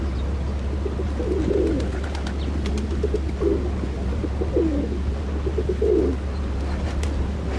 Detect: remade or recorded recorded